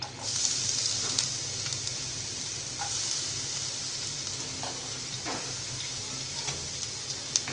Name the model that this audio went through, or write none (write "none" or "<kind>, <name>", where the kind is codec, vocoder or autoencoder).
none